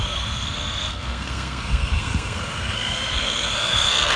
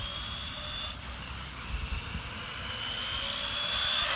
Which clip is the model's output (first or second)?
first